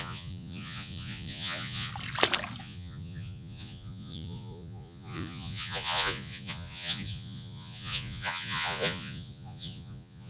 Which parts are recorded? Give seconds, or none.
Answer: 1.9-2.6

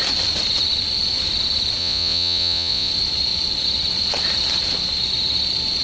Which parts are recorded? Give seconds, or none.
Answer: 0.0-1.8; 2.9-5.8

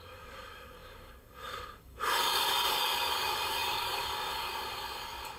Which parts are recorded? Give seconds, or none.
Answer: none

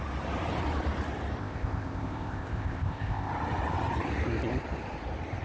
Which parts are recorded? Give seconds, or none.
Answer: 0.0-1.4; 3.3-5.4